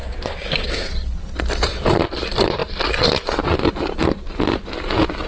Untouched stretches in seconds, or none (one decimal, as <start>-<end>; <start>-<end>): 0.9-5.3